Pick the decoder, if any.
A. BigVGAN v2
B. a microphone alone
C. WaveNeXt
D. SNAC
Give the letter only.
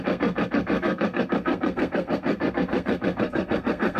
D